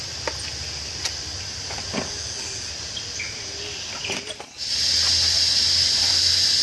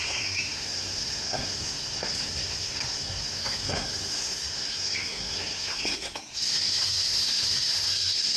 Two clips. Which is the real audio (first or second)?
first